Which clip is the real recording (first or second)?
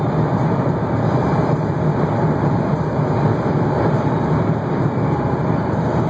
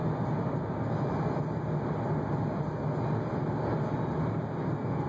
second